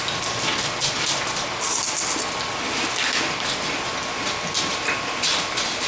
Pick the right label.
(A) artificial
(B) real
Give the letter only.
B